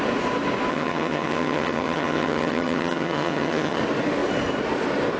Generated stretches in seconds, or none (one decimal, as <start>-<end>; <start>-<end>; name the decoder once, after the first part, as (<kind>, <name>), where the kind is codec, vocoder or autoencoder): 0.7-3.8 (vocoder, HiFi-GAN)